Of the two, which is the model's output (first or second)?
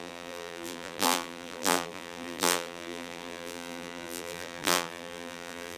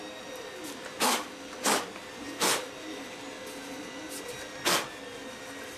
first